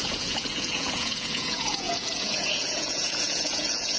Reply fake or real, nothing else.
fake